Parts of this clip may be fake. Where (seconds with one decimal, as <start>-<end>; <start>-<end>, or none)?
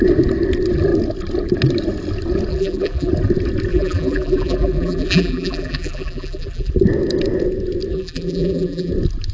2.5-3.1; 3.7-6.7; 7.9-8.9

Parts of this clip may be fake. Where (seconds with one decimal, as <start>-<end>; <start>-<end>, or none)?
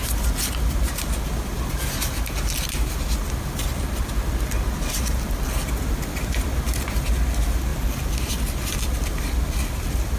none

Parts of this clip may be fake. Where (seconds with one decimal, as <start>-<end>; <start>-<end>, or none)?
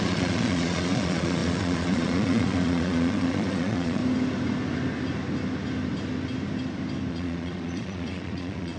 0.0-4.0; 7.1-8.8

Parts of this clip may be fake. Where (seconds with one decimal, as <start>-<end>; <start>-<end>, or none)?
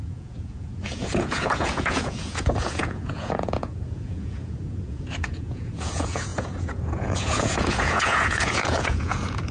0.0-9.5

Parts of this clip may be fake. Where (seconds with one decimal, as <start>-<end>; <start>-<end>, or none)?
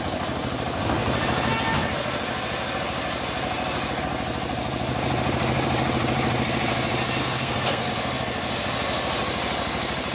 7.2-7.9